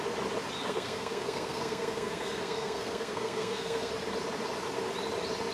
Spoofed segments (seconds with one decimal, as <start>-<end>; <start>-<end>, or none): 0.6-3.9